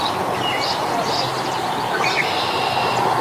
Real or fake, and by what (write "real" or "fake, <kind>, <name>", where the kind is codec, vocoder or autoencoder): fake, vocoder, BigVGAN v2